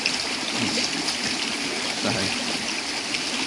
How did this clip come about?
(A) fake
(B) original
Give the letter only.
B